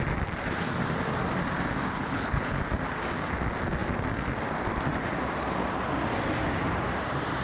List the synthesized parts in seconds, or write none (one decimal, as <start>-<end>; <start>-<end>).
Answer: 1.8-2.6